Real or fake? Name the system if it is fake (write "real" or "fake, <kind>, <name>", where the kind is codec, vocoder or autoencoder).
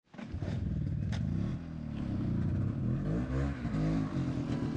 real